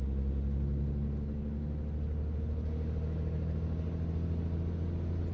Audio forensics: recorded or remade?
recorded